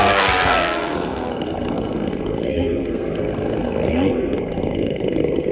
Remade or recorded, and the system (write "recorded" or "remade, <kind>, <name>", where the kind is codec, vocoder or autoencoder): remade, codec, SNAC